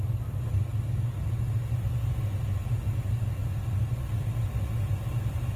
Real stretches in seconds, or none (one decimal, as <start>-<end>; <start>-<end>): 0.0-5.6